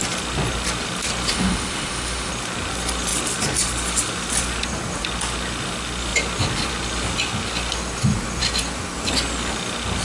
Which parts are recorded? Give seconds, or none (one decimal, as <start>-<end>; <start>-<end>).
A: 0.0-1.3; 2.3-10.0